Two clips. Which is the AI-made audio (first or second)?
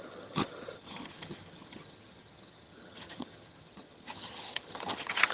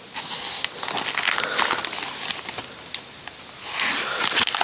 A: first